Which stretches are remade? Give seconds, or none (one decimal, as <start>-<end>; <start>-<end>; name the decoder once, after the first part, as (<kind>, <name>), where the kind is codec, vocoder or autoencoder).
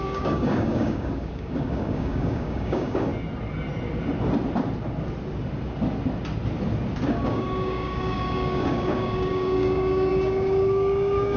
0.0-3.1 (codec, DAC); 7.1-11.4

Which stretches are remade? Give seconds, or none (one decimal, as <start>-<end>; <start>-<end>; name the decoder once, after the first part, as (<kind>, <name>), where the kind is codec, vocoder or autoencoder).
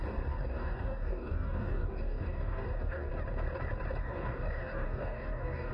0.4-3.1 (codec, DAC); 4.0-5.7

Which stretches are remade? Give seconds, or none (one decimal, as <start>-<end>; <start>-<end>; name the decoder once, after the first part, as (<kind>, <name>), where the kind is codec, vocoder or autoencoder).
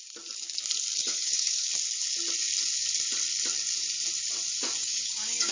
1.0-1.7 (codec, DAC); 4.8-5.5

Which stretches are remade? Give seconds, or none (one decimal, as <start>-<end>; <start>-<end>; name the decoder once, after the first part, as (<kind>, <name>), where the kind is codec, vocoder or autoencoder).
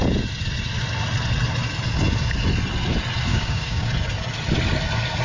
3.3-3.9 (codec, DAC)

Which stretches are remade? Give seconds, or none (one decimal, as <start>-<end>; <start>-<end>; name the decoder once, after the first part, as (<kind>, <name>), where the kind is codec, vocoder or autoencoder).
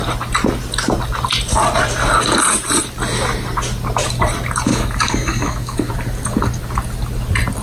4.7-5.9 (codec, DAC)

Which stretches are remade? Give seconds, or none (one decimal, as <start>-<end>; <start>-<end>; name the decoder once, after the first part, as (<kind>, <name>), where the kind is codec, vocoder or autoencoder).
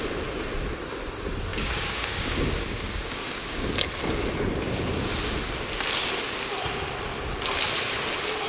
1.5-3.7 (codec, DAC)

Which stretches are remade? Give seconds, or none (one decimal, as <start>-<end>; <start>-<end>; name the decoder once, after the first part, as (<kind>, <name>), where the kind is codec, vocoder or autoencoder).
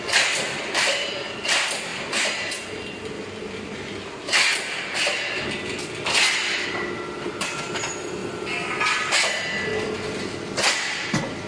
none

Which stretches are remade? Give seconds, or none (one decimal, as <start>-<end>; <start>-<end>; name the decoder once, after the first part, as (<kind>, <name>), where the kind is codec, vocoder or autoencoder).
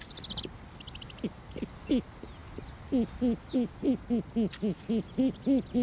none